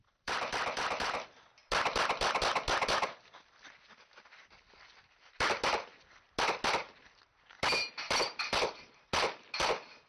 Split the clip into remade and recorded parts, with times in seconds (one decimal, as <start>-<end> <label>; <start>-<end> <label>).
0.0-1.6 remade; 1.6-10.1 recorded